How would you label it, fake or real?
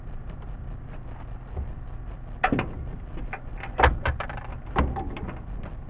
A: real